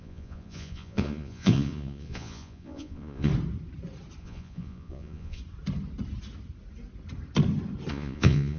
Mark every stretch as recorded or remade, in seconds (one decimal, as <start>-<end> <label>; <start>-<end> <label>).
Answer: 0.0-3.3 remade; 3.3-4.2 recorded; 4.2-5.4 remade; 5.4-7.9 recorded; 7.9-8.6 remade